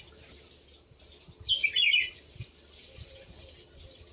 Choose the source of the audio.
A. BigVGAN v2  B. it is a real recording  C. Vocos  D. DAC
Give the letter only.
B